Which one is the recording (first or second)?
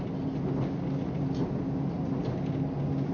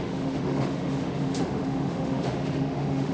first